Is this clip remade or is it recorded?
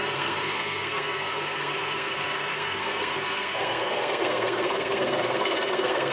remade